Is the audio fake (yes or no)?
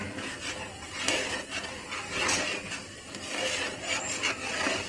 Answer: no